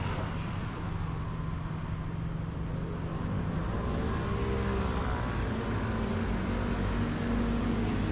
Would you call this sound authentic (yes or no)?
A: yes